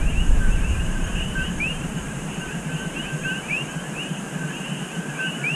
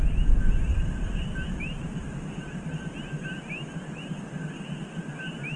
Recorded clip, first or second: second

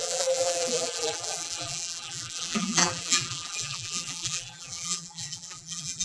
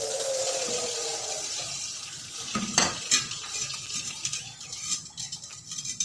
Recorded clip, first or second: second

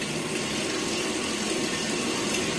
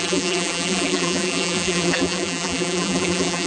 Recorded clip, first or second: first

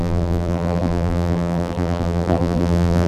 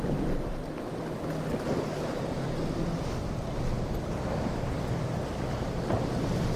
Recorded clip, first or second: second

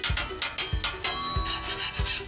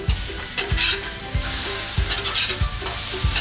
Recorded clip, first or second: first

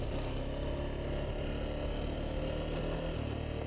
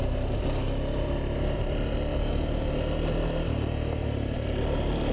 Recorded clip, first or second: first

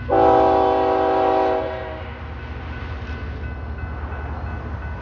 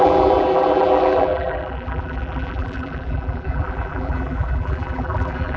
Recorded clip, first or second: first